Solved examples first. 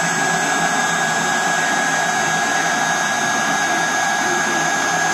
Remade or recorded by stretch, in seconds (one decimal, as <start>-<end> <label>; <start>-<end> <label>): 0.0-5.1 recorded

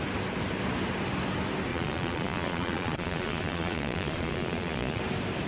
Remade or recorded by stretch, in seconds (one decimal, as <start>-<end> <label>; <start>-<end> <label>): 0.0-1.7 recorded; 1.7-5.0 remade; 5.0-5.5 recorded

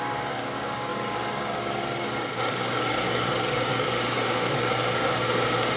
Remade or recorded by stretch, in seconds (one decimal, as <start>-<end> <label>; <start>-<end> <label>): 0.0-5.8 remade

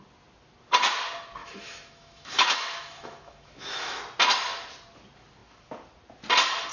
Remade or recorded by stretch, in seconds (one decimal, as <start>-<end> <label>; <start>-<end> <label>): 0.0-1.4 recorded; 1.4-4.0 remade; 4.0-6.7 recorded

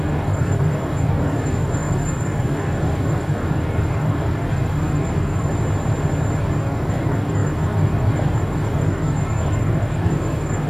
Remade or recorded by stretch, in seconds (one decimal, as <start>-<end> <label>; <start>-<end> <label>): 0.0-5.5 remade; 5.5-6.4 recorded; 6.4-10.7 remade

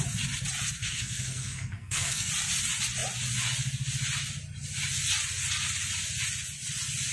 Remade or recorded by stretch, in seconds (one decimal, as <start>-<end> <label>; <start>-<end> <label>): 0.0-0.8 recorded; 0.8-2.3 remade; 2.3-7.1 recorded

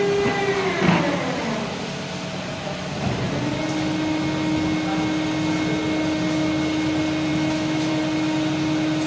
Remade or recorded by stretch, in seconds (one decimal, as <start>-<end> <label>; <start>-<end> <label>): 0.0-7.3 recorded; 7.3-7.9 remade; 7.9-9.1 recorded

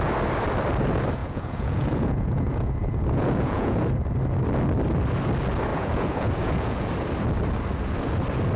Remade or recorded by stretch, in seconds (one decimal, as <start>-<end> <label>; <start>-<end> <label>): 0.0-1.2 recorded; 1.2-3.8 remade; 3.8-5.7 recorded; 5.7-6.9 remade; 6.9-8.6 recorded